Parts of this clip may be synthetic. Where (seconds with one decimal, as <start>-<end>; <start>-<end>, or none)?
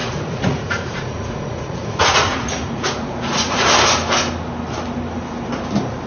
0.0-3.7